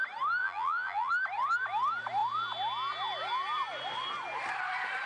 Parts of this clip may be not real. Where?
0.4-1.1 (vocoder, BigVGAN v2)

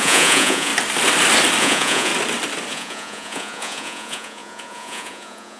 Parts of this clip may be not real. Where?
0.0-0.7 (vocoder, Vocos); 1.6-2.1; 2.7-5.6

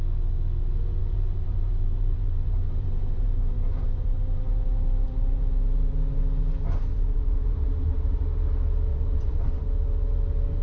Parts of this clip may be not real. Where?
1.0-6.2 (vocoder, BigVGAN v2); 6.9-8.2; 8.9-9.6